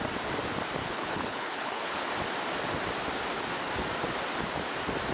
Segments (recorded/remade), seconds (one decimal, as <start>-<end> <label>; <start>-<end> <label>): 0.0-0.8 recorded; 0.8-2.1 remade; 2.1-5.1 recorded